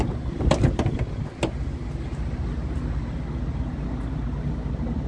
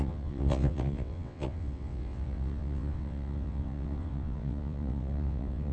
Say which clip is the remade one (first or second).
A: second